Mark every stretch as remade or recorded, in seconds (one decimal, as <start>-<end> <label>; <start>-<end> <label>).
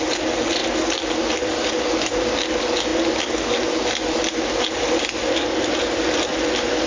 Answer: 0.0-6.9 recorded